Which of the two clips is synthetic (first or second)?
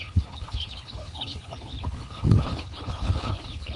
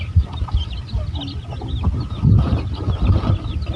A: first